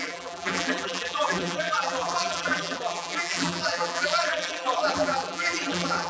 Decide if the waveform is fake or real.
fake